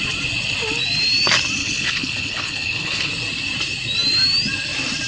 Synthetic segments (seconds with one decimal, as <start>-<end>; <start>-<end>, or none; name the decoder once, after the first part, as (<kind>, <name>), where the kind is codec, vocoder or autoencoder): 1.6-3.1 (codec, HILCodec)